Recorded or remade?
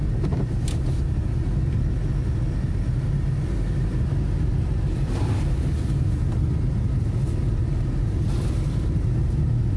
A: recorded